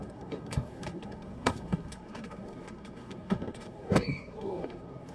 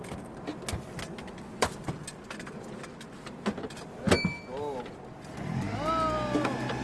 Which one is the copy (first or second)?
first